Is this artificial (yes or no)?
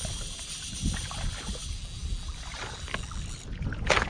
no